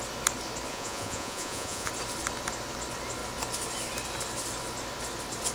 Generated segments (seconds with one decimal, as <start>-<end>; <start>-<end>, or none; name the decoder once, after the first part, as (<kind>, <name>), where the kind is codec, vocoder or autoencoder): 0.7-1.9 (vocoder, Vocos)